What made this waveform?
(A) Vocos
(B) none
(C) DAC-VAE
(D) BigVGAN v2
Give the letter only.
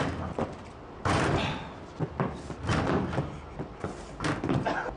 B